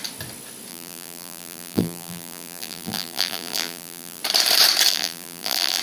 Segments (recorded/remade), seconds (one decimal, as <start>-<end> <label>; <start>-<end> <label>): 0.0-0.7 recorded; 0.7-4.2 remade; 4.2-4.9 recorded; 4.9-5.8 remade